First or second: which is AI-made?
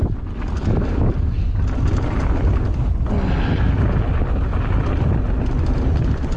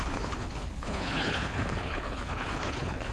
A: second